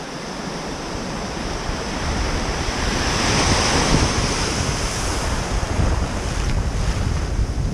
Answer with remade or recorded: recorded